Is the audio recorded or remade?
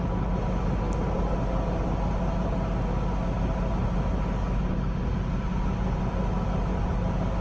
recorded